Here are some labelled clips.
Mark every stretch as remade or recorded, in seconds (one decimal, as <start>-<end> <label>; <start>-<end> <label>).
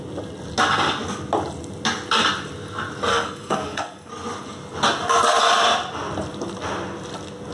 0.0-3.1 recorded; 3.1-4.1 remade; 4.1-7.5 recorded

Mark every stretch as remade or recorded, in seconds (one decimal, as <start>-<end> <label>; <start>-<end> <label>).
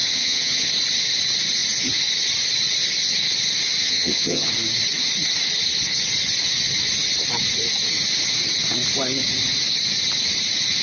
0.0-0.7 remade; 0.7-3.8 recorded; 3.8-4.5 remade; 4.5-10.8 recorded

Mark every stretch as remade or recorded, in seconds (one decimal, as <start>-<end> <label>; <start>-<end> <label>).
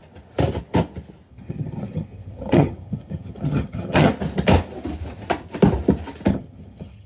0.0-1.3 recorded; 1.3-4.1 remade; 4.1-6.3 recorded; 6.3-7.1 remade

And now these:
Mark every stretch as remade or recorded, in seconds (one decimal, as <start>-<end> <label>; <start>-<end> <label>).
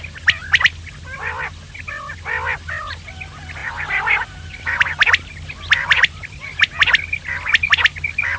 0.0-8.4 recorded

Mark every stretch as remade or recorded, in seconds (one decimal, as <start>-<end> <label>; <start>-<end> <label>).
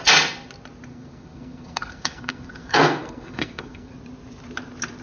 0.0-0.9 recorded; 0.9-3.9 remade; 3.9-5.0 recorded